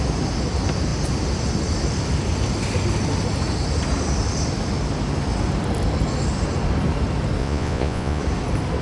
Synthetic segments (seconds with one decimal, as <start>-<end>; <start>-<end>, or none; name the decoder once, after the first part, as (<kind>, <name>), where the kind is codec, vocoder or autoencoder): 7.4-8.2 (vocoder, Vocos)